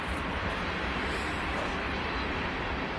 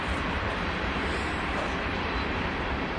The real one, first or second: first